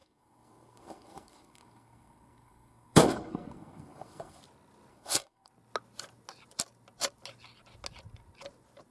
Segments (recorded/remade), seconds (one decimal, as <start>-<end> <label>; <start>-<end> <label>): 0.0-4.4 remade; 4.4-4.9 recorded; 4.9-5.5 remade; 5.5-8.9 recorded